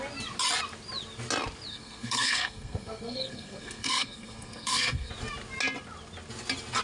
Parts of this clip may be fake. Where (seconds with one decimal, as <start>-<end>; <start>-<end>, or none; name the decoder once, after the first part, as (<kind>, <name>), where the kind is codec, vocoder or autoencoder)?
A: 1.7-5.1 (codec, SNAC)